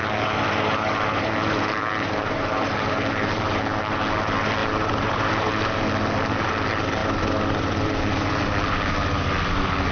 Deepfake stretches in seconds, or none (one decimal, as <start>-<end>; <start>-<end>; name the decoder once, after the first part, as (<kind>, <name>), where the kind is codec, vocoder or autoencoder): 0.0-3.6 (vocoder, BigVGAN v2); 4.6-5.5